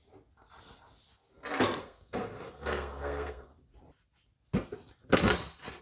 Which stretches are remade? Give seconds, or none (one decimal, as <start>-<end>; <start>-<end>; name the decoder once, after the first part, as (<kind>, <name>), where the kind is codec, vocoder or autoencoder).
1.8-3.5 (codec, SNAC)